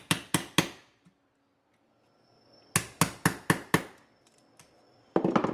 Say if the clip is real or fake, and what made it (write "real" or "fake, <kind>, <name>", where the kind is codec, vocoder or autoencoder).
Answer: real